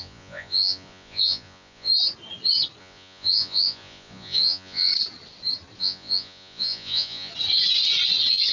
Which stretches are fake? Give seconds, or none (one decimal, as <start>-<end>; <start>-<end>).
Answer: 0.0-1.9; 2.8-4.9; 5.8-7.3